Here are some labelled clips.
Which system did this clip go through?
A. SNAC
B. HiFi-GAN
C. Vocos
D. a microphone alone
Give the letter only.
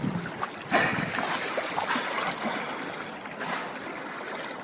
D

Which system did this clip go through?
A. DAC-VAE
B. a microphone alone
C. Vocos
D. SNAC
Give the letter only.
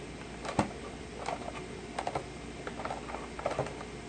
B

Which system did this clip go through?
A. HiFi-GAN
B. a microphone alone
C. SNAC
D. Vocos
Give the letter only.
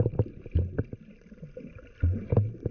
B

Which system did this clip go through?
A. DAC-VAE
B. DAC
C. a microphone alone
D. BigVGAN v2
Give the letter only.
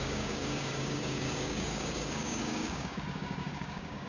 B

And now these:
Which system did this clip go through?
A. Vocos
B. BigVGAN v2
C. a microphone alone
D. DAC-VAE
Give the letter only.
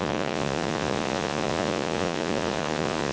A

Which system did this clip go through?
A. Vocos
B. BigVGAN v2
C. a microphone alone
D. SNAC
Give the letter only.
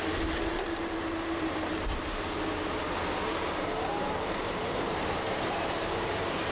B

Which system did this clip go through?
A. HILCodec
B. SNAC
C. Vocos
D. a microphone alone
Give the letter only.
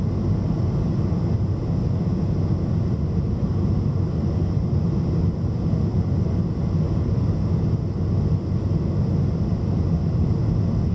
D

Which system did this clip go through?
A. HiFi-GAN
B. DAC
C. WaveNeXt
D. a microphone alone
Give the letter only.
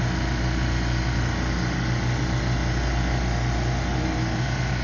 D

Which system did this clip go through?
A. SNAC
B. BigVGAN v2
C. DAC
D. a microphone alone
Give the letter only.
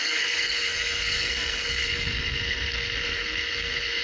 A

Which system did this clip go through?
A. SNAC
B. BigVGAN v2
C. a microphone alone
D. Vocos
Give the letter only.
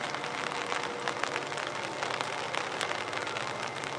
C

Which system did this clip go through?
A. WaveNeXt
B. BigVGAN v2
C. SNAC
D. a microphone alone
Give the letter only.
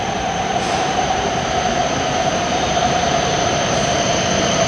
B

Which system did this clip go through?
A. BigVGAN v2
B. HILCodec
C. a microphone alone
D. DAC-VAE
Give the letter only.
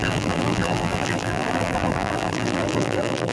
A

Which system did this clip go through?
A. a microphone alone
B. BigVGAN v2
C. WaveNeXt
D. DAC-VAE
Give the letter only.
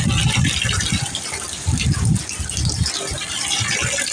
A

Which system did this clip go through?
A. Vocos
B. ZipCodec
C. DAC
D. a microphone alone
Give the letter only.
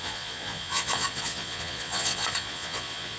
A